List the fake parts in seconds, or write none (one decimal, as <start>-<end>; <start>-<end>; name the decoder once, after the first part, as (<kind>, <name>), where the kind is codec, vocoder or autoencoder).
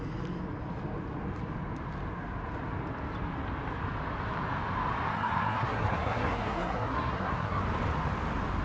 5.1-7.6 (codec, SNAC)